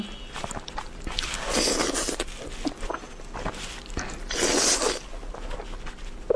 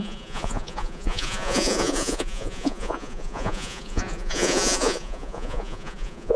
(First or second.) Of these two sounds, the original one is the first